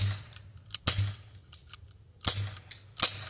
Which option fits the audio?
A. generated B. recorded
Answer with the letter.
B